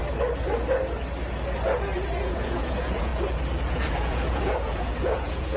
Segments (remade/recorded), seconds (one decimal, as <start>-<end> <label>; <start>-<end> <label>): 0.0-2.2 recorded; 2.2-3.1 remade; 3.1-3.7 recorded; 3.7-5.6 remade